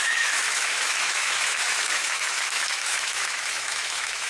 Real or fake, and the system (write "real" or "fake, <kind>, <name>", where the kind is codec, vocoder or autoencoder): fake, autoencoder, DAC-VAE